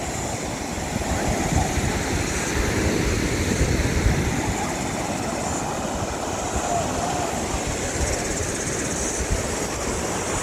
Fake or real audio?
real